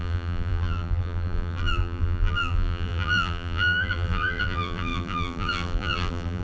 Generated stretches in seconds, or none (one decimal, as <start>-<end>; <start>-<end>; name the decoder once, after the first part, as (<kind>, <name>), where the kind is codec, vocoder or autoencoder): 0.0-6.4 (vocoder, BigVGAN v2)

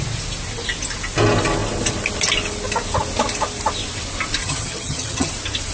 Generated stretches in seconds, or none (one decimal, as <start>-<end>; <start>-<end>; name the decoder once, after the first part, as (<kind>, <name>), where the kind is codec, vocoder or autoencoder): 4.4-5.3 (vocoder, HiFi-GAN)

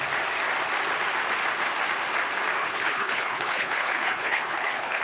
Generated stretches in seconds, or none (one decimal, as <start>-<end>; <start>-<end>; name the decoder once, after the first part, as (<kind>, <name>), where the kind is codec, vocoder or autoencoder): 2.6-5.0 (codec, HILCodec)

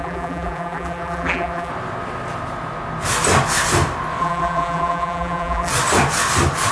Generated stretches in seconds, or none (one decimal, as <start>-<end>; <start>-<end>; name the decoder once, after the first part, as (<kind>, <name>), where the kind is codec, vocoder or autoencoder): 0.0-1.7 (vocoder, BigVGAN v2); 4.2-5.7

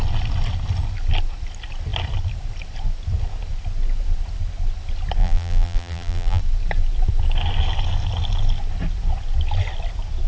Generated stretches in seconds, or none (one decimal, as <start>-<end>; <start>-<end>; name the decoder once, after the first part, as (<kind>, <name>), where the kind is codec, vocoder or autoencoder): 5.2-6.4 (vocoder, BigVGAN v2)